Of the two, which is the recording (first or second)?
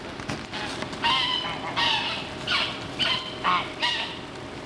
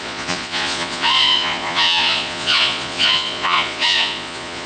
first